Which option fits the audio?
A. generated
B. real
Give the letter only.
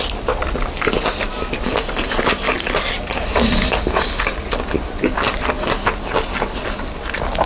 B